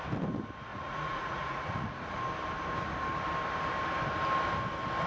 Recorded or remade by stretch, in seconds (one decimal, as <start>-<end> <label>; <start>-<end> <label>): 0.0-0.7 recorded; 0.7-2.2 remade; 2.2-5.1 recorded